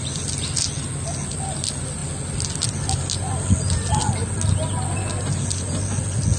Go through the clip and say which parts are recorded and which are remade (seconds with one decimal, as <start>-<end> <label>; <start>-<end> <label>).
0.0-6.4 recorded